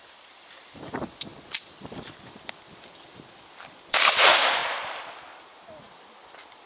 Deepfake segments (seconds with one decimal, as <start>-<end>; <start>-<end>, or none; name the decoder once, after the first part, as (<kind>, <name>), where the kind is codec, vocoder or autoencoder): 0.0-1.3 (vocoder, BigVGAN v2); 1.9-6.7